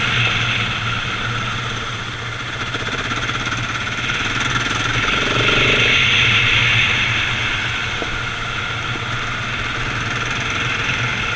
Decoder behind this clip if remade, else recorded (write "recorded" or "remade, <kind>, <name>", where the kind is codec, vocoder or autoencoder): recorded